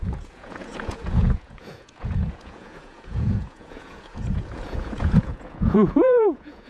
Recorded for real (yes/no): no